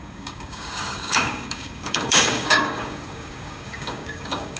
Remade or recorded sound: remade